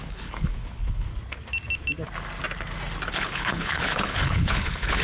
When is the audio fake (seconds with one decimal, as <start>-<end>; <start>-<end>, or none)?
0.0-1.1; 3.1-5.0